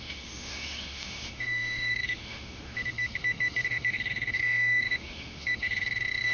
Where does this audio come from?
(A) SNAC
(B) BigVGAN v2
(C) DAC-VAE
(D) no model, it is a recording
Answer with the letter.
C